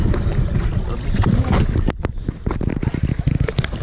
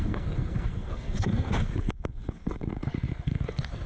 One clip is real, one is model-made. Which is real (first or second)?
first